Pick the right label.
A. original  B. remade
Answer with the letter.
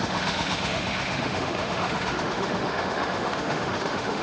B